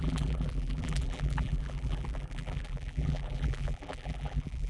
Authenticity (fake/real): fake